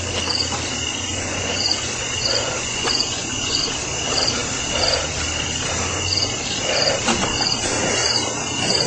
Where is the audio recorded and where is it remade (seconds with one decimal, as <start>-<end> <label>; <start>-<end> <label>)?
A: 0.0-0.9 recorded; 0.9-3.6 remade; 3.6-8.9 recorded